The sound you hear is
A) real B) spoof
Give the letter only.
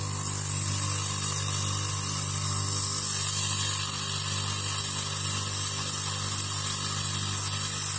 A